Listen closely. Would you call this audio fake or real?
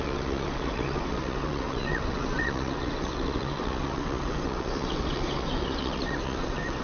fake